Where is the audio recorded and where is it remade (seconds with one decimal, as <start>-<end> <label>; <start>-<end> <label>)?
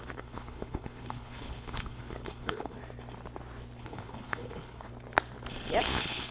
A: 0.0-2.8 remade; 2.8-3.8 recorded; 3.8-4.9 remade; 4.9-5.8 recorded; 5.8-6.3 remade